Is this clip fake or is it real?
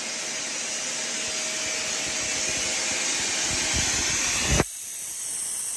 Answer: real